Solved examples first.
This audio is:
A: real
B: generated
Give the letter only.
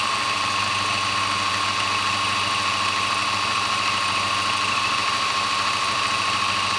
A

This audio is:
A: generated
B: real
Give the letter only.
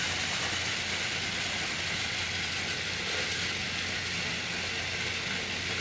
B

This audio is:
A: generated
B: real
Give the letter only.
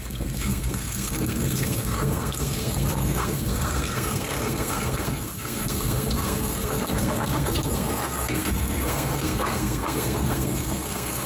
A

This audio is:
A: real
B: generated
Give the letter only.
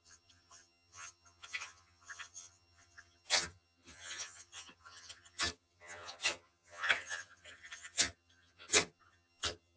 B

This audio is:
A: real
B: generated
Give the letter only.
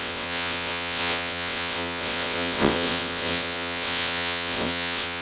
B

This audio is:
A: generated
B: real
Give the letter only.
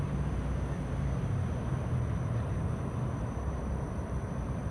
A